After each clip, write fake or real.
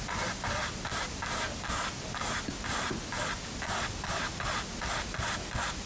real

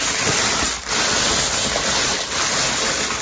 real